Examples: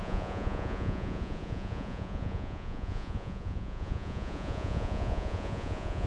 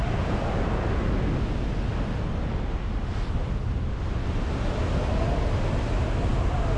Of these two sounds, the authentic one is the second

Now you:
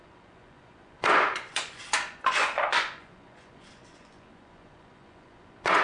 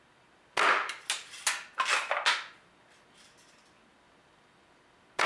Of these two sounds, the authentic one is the second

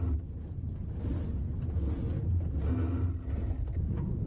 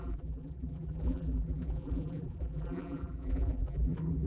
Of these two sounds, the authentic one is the first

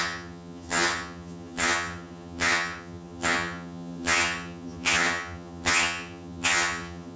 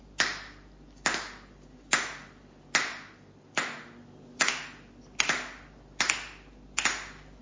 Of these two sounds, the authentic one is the second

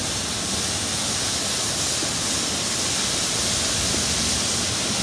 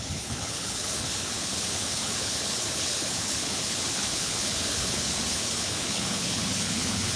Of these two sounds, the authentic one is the first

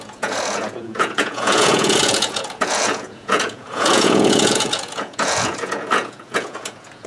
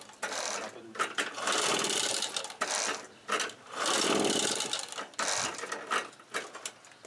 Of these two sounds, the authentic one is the second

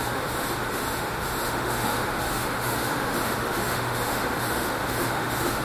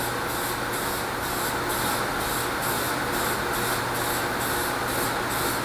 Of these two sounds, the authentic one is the second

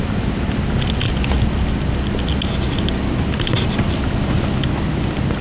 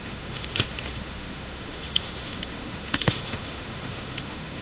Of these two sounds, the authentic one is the first